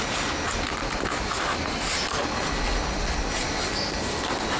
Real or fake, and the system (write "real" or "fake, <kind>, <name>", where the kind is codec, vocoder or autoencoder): real